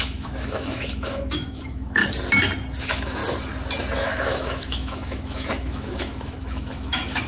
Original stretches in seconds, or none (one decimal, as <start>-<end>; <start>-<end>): 2.0-2.8; 3.2-4.0